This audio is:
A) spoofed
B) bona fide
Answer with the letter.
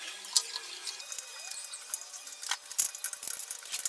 B